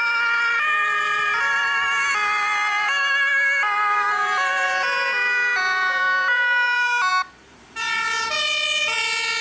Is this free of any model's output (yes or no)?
no